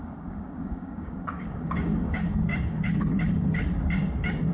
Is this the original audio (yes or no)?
no